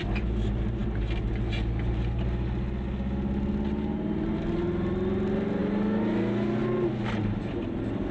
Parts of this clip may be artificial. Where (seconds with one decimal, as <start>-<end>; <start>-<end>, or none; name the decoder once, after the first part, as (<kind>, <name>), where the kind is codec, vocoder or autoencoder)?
none